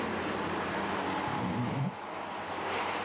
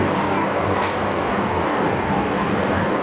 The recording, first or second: first